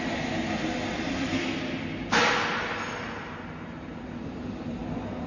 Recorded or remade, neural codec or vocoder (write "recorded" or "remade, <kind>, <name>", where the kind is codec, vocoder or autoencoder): recorded